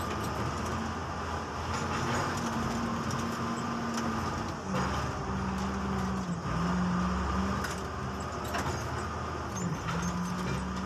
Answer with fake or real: real